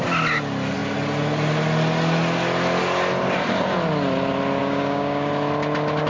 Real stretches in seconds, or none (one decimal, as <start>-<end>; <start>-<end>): 0.0-4.6; 5.3-6.1